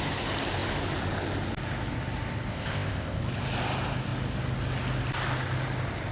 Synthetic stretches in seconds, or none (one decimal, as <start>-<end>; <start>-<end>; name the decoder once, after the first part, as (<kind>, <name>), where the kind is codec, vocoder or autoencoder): 2.5-3.2 (codec, ZipCodec)